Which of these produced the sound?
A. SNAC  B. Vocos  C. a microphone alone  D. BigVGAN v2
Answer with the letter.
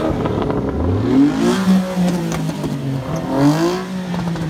C